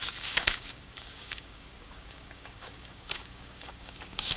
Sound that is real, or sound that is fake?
fake